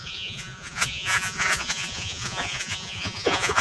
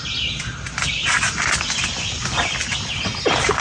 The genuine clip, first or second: second